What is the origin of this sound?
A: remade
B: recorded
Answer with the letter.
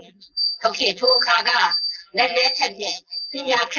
A